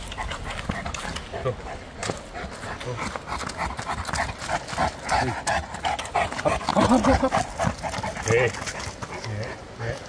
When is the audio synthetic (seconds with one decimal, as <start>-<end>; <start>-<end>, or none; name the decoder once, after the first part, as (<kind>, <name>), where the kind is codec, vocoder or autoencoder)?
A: none